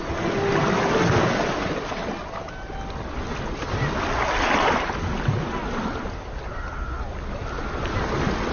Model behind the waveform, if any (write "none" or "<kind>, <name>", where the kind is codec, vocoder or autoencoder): none